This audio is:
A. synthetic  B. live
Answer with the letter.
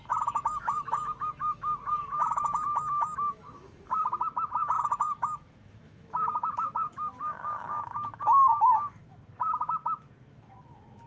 A